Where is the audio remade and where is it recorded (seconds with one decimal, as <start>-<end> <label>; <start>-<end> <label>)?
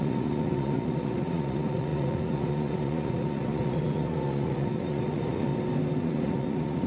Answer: 0.0-5.5 remade; 5.5-6.0 recorded; 6.0-6.9 remade